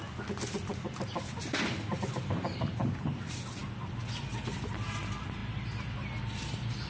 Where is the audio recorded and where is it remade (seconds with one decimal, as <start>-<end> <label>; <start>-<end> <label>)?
0.0-6.9 recorded

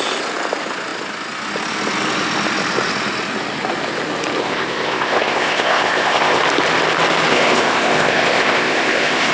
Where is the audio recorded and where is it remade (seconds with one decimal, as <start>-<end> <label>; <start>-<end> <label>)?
0.0-4.4 recorded; 4.4-6.4 remade; 6.4-7.3 recorded; 7.3-9.3 remade

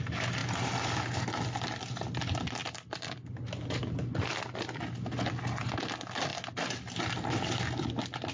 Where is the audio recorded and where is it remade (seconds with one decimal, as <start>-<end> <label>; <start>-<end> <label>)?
0.0-8.3 recorded